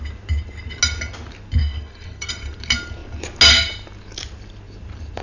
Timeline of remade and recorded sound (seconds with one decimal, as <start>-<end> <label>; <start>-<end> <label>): 0.0-1.6 recorded; 1.6-2.3 remade; 2.3-5.2 recorded

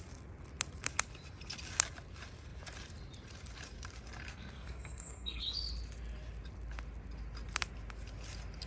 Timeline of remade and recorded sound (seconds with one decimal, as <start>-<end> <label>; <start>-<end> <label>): 0.0-4.3 recorded; 4.3-5.4 remade; 5.4-8.7 recorded

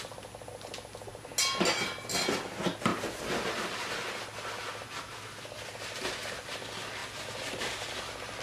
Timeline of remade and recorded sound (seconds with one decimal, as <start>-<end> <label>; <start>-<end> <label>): 0.0-8.4 recorded

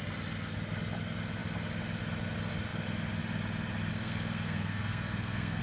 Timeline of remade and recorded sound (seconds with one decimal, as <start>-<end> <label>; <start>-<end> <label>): 0.0-3.9 recorded; 3.9-5.6 remade

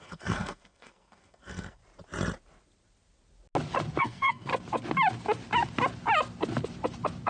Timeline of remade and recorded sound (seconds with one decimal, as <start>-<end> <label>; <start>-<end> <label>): 0.0-1.8 remade; 1.8-4.0 recorded; 4.0-4.5 remade; 4.5-7.3 recorded

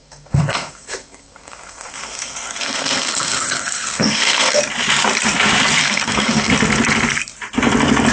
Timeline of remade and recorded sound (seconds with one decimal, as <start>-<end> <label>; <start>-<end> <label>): 0.0-4.6 remade; 4.6-5.8 recorded; 5.8-6.5 remade; 6.5-8.1 recorded